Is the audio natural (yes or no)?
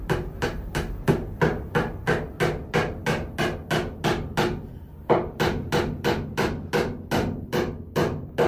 yes